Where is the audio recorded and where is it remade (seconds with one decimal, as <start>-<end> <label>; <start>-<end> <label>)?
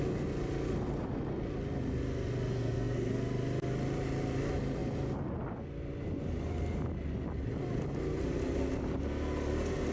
0.0-2.5 recorded; 2.5-3.1 remade; 3.1-9.9 recorded